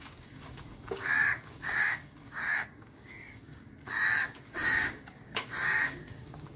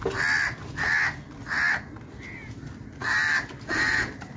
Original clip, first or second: second